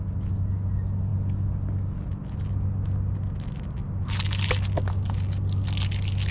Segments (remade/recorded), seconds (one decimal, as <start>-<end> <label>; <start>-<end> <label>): 0.0-6.3 recorded